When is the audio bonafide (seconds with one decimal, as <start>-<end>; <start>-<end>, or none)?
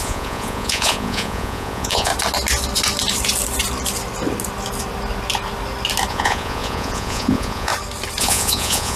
2.1-6.1; 7.7-8.2